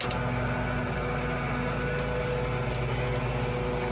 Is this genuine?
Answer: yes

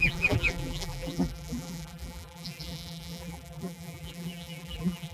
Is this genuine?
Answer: no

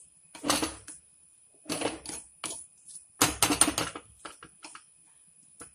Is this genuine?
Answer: yes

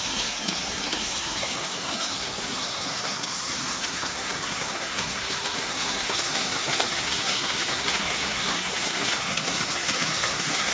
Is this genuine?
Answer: no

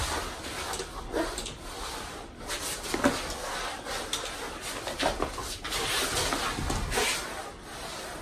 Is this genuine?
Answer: yes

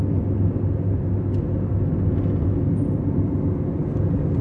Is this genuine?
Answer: yes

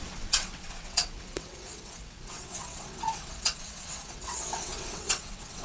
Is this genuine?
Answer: no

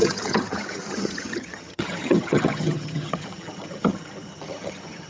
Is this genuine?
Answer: no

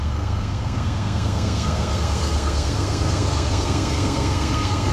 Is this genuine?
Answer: no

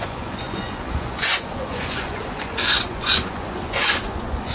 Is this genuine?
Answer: no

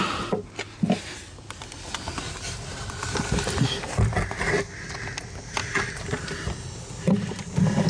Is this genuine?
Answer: yes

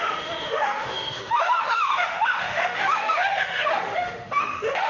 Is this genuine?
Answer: no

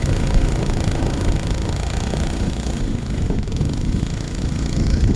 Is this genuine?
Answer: no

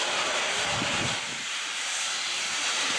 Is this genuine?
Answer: no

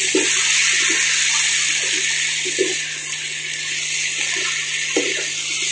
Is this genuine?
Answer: yes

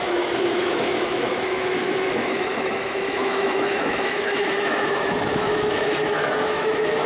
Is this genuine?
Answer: no